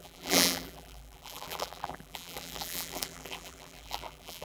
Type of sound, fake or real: fake